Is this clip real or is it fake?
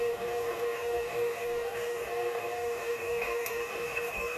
fake